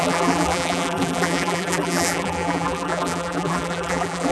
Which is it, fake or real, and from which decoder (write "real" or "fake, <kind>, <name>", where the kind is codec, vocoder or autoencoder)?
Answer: fake, vocoder, BigVGAN v2